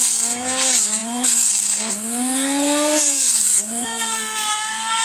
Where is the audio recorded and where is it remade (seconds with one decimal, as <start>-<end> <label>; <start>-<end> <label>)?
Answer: 0.0-5.0 remade